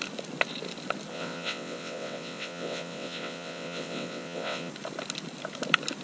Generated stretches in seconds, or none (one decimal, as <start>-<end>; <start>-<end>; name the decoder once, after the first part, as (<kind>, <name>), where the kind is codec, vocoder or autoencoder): 1.1-4.7 (vocoder, WaveNeXt)